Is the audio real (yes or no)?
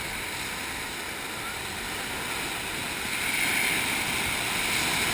yes